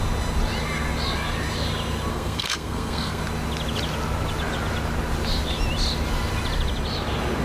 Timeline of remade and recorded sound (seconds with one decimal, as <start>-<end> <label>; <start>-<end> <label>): 0.0-2.1 recorded; 2.1-3.2 remade; 3.2-7.4 recorded